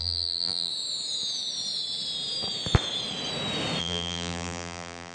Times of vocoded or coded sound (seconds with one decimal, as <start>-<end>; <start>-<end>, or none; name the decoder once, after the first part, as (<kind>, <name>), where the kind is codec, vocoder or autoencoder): 0.0-0.7 (vocoder, BigVGAN v2); 3.8-5.1